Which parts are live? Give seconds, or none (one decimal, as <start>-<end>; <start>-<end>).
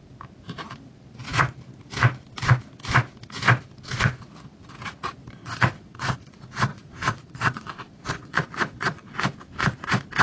0.0-5.4; 6.3-6.7; 9.1-10.2